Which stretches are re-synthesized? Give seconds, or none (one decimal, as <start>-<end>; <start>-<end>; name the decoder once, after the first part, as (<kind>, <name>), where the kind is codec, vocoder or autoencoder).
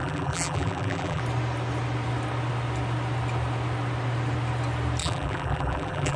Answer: 0.0-1.2 (vocoder, BigVGAN v2); 5.0-6.2